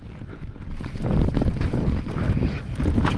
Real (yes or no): yes